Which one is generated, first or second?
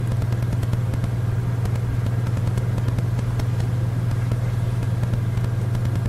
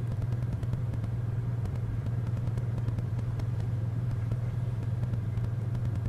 second